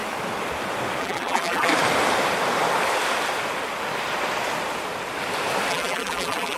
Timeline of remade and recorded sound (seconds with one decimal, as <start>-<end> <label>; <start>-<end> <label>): 0.0-1.0 recorded; 1.0-1.7 remade; 1.7-5.7 recorded; 5.7-6.6 remade